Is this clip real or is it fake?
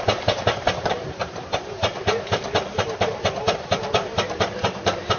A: fake